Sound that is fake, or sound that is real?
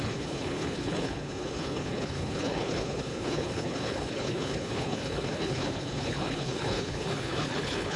fake